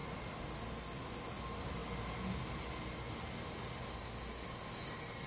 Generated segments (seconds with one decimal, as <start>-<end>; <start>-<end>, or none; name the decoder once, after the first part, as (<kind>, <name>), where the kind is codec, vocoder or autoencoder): 0.0-1.1 (vocoder, BigVGAN v2)